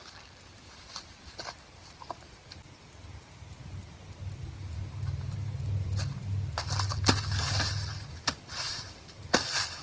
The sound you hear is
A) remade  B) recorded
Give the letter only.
B